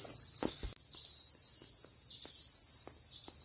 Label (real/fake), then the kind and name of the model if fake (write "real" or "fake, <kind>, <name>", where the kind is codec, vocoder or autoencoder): real